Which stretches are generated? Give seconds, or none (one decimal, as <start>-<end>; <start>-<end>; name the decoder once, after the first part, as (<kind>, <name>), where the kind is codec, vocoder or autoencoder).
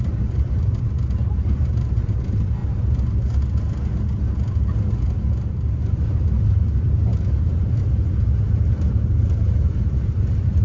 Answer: 0.0-2.6 (vocoder, BigVGAN v2); 6.4-10.6